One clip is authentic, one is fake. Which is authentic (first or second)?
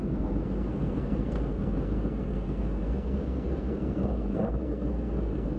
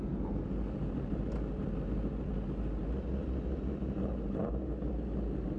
second